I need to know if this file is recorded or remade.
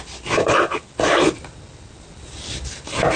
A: recorded